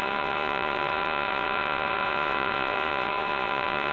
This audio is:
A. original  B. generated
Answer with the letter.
B